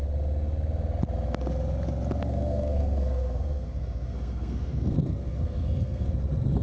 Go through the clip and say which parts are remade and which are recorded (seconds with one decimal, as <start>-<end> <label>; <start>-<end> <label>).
0.0-2.2 recorded; 2.2-6.1 remade; 6.1-6.6 recorded